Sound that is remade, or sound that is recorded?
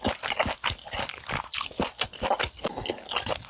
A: recorded